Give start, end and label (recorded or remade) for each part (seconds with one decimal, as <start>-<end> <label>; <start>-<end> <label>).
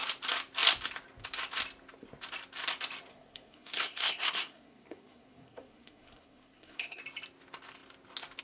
0.0-3.1 recorded; 3.1-7.0 remade; 7.0-8.4 recorded